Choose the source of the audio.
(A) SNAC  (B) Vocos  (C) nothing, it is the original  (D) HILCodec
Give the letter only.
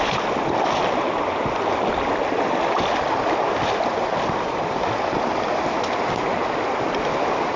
C